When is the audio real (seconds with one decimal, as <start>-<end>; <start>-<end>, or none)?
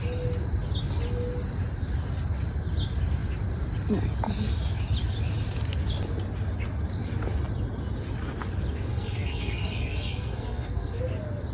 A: 0.0-8.9; 11.0-11.5